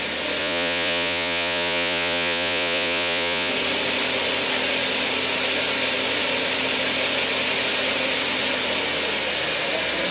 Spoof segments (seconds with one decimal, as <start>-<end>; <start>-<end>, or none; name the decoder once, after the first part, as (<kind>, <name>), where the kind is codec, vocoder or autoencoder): 0.4-3.5 (vocoder, Vocos)